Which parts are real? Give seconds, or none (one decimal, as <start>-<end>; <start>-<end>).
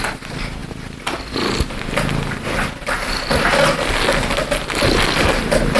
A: 0.0-5.8